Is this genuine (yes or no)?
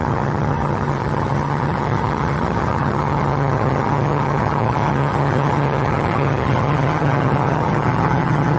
no